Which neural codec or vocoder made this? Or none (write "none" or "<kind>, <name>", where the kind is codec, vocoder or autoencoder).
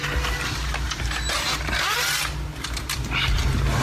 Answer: none